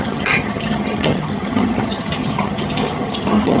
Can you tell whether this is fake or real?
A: fake